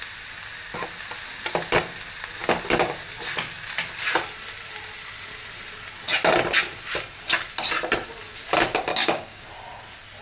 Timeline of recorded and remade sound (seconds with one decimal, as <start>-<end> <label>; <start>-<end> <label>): 0.0-8.9 recorded; 8.9-9.5 remade; 9.5-10.2 recorded